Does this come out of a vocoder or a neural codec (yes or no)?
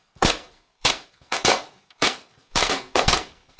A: yes